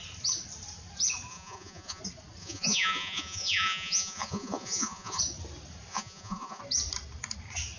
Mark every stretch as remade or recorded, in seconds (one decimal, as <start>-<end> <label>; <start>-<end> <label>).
0.0-1.3 recorded; 1.3-2.0 remade; 2.0-2.4 recorded; 2.4-5.2 remade; 5.2-5.9 recorded; 5.9-6.6 remade; 6.6-7.8 recorded